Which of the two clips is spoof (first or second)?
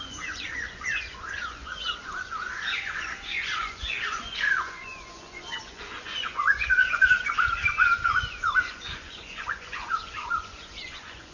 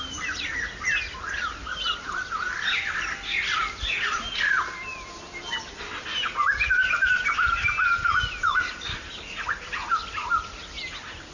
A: first